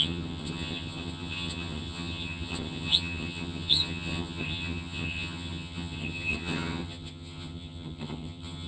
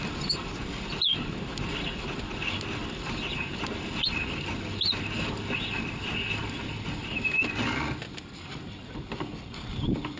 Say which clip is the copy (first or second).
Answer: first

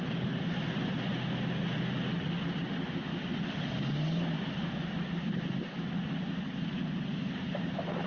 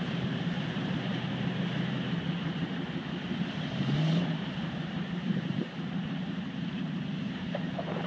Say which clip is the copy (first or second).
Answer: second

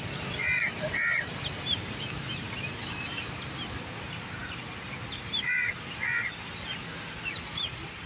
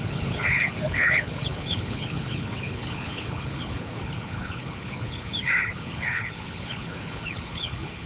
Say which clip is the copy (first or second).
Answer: second